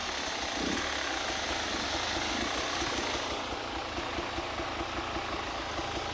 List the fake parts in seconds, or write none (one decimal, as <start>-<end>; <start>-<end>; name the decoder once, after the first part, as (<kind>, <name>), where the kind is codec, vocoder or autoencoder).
none